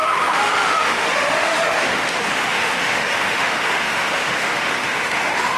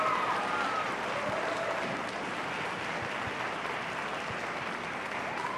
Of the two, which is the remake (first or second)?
first